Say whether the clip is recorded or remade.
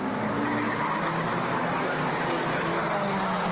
recorded